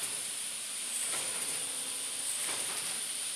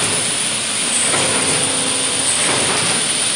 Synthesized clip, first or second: first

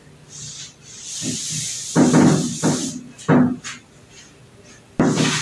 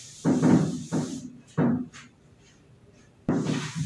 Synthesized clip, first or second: second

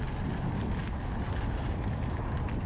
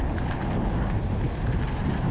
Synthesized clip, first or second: second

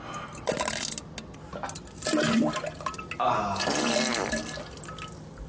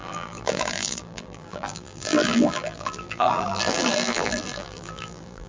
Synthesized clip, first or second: second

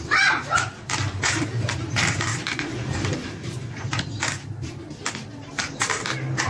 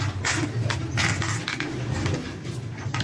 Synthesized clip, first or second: first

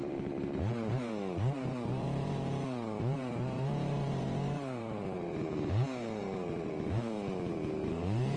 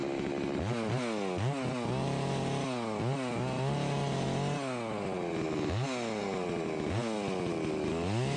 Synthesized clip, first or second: first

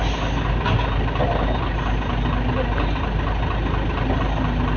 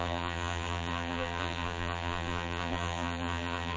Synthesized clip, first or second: second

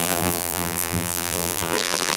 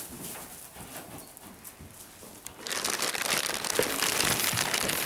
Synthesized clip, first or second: first